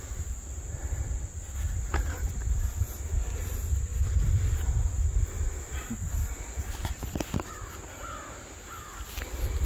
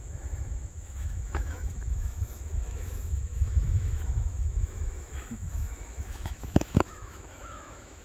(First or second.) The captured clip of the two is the first